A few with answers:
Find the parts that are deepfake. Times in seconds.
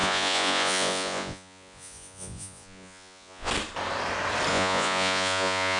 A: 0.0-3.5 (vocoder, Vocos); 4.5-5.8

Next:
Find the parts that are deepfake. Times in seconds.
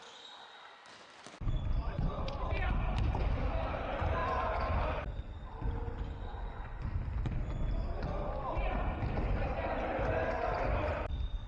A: 1.8-2.4 (vocoder, Vocos); 4.2-4.8; 6.3-7.0